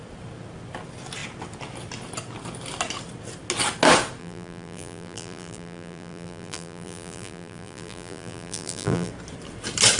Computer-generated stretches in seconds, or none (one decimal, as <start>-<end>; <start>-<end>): 4.2-9.1